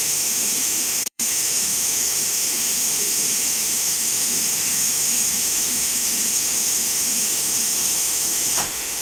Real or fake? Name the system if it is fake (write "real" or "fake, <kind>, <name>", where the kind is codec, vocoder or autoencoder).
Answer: fake, autoencoder, DAC-VAE